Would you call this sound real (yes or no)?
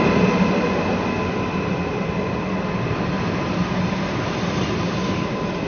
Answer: yes